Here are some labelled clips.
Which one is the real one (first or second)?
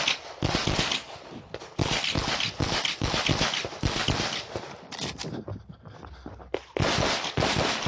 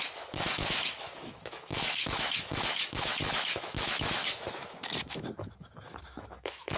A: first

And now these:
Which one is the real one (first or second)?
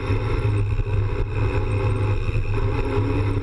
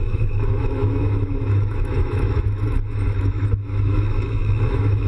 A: first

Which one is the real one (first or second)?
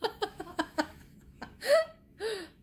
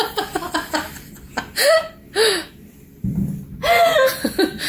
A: second